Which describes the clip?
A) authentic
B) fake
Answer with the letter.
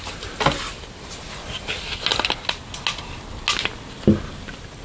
A